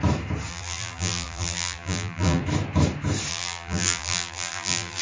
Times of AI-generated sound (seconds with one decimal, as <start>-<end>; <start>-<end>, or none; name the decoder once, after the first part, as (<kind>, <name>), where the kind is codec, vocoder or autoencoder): 0.5-2.4 (vocoder, BigVGAN v2); 3.3-5.0